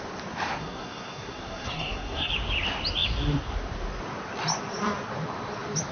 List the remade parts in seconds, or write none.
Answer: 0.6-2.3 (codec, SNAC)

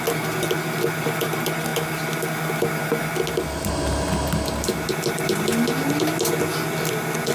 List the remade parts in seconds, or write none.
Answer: none